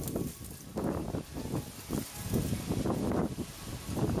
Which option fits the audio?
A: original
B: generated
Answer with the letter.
A